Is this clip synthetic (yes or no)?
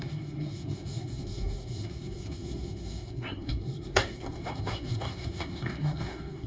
yes